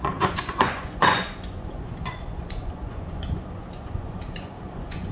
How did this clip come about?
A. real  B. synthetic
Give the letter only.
B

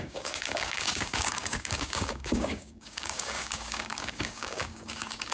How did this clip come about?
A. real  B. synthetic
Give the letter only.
B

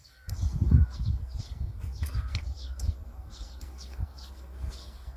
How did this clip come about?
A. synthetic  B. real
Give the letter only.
A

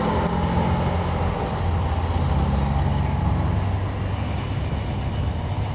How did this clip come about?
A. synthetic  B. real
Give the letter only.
B